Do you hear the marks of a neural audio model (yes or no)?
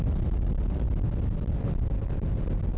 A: no